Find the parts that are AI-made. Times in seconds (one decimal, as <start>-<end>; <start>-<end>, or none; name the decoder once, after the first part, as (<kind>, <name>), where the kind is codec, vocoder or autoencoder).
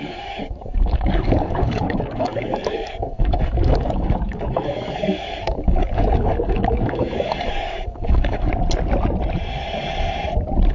0.0-8.5 (codec, DAC)